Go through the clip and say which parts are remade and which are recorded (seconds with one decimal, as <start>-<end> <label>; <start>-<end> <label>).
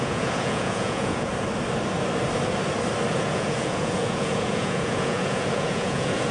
0.0-1.3 remade; 1.3-3.1 recorded; 3.1-6.3 remade